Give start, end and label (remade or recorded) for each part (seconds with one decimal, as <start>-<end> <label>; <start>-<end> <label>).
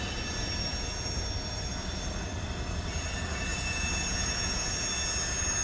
0.0-3.5 recorded; 3.5-4.7 remade; 4.7-5.6 recorded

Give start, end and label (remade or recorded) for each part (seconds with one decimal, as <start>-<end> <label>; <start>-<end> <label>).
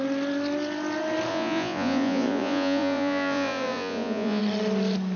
0.0-1.3 recorded; 1.3-4.4 remade; 4.4-5.2 recorded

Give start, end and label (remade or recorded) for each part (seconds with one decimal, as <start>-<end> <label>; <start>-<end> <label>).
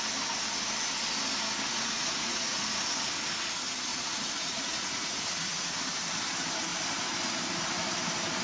0.0-1.7 recorded; 1.7-2.6 remade; 2.6-3.9 recorded; 3.9-5.8 remade; 5.8-8.4 recorded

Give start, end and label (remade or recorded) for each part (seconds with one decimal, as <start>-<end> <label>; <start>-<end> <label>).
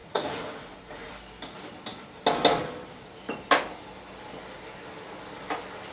0.0-1.1 remade; 1.1-5.9 recorded